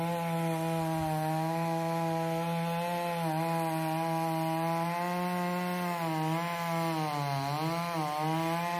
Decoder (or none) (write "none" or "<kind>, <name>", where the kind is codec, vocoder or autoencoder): none